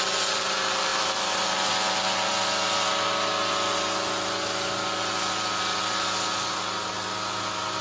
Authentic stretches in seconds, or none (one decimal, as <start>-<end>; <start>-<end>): 0.0-7.8